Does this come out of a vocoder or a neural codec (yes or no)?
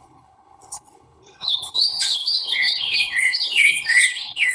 yes